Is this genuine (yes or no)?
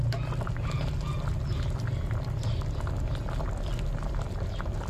yes